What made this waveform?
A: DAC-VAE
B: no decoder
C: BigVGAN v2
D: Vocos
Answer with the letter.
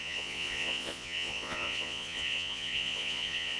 D